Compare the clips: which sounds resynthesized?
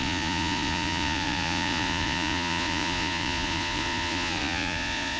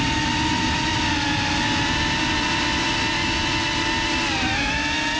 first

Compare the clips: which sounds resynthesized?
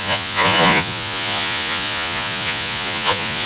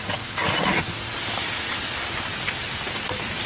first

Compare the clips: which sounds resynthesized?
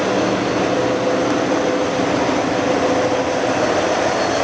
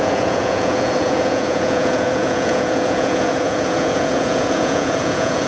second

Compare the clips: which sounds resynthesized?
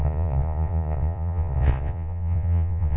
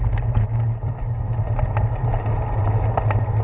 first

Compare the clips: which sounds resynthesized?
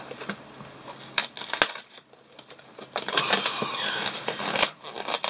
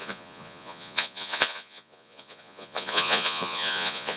second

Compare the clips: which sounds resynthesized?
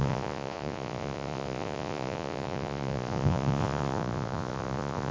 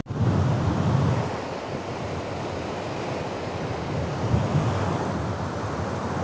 first